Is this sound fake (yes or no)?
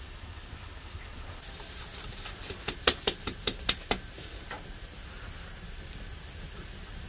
no